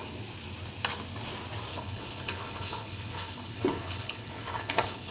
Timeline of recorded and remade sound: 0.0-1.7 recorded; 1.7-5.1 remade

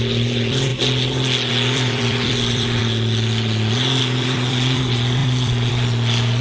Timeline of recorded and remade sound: 0.0-0.7 remade; 0.7-1.5 recorded; 1.5-2.8 remade; 2.8-4.0 recorded; 4.0-6.4 remade

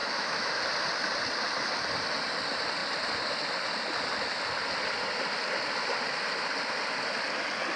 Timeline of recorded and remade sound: 0.0-0.6 remade; 0.6-7.8 recorded

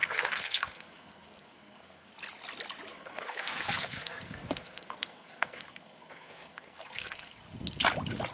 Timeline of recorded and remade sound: 0.0-2.1 remade; 2.1-2.9 recorded; 2.9-7.4 remade; 7.4-8.3 recorded

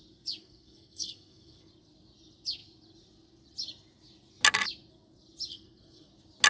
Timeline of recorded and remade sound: 0.0-0.4 recorded; 0.4-1.7 remade; 1.7-5.5 recorded; 5.5-6.1 remade; 6.1-6.5 recorded